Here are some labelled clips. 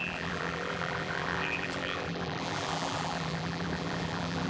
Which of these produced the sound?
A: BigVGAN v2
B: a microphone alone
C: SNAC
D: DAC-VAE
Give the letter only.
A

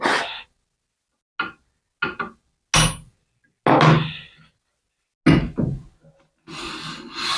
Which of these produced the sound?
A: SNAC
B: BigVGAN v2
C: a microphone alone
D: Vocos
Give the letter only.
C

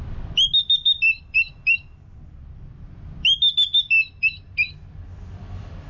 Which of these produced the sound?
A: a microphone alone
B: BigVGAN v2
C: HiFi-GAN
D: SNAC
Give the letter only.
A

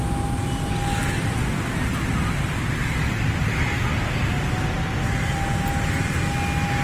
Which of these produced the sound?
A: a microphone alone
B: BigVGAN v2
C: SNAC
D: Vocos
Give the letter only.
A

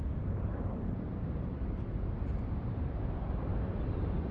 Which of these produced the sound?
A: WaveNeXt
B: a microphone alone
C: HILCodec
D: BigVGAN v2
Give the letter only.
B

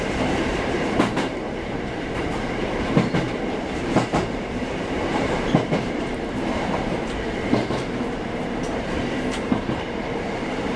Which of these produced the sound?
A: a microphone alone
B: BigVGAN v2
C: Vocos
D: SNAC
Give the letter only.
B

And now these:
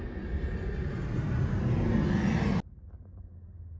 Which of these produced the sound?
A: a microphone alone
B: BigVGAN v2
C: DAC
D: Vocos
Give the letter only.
A